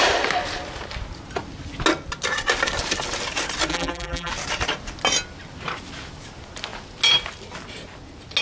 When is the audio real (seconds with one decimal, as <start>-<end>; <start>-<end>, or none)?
0.0-3.7; 4.3-8.4